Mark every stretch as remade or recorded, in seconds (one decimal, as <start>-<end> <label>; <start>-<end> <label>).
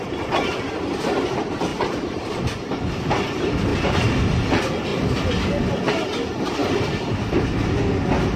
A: 0.0-3.7 recorded; 3.7-4.5 remade; 4.5-8.4 recorded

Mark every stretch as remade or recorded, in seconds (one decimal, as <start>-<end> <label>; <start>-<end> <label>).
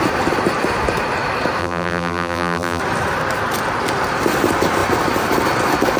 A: 0.0-1.6 recorded; 1.6-2.8 remade; 2.8-6.0 recorded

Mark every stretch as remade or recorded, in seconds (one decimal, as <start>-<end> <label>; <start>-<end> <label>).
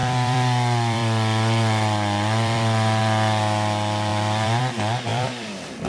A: 0.0-3.0 remade; 3.0-4.1 recorded; 4.1-4.6 remade; 4.6-5.1 recorded; 5.1-5.9 remade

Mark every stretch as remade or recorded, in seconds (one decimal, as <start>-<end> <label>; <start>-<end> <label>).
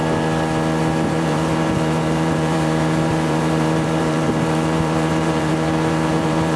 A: 0.0-0.8 recorded; 0.8-6.6 remade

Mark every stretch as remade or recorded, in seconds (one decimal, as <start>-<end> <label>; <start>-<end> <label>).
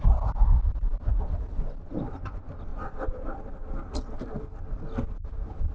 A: 0.0-2.7 recorded; 2.7-4.6 remade; 4.6-5.7 recorded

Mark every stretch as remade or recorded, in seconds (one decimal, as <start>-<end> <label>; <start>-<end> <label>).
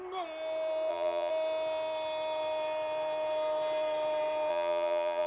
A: 0.0-0.9 recorded; 0.9-1.3 remade; 1.3-4.5 recorded; 4.5-5.3 remade